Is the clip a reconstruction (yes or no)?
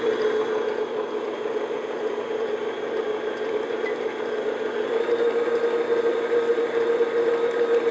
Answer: no